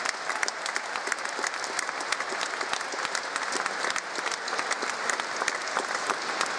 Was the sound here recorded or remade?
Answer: recorded